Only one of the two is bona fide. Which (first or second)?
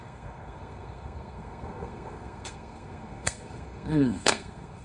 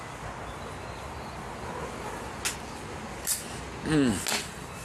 second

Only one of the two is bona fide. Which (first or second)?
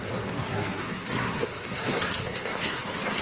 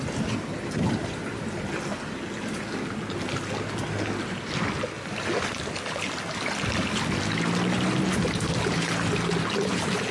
second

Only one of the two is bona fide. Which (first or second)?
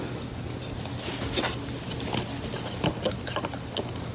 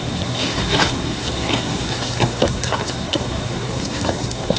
first